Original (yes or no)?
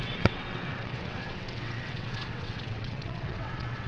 no